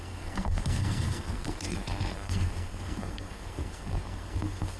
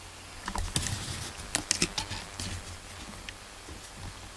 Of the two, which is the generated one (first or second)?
first